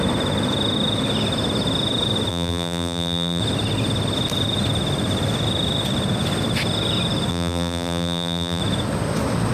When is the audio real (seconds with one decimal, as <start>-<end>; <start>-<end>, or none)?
0.0-2.3; 3.4-7.3; 8.6-9.5